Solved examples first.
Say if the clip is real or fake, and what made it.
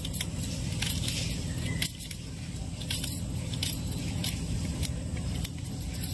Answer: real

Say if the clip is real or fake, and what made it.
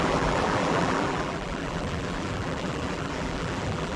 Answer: fake, vocoder, BigVGAN v2